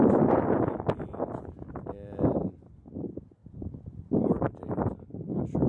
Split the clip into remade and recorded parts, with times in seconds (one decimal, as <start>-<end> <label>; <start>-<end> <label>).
0.0-3.4 recorded; 3.4-4.8 remade; 4.8-5.7 recorded